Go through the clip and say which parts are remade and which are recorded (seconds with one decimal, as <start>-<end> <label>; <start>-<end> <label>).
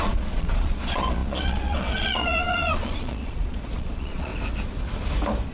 0.0-4.3 remade; 4.3-5.5 recorded